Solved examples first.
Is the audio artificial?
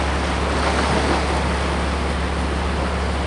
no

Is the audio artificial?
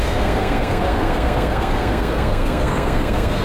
yes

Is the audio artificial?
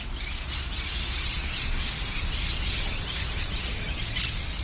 no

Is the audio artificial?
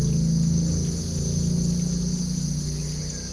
no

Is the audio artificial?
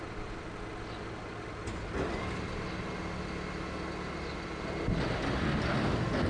no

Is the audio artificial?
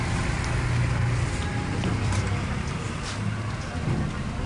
no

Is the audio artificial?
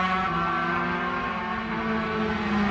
no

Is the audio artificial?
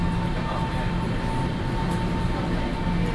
no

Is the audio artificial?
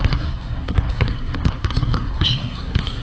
yes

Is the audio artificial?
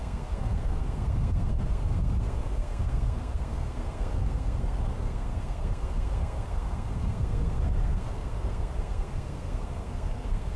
yes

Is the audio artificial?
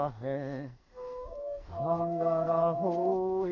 yes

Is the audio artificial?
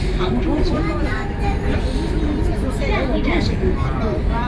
no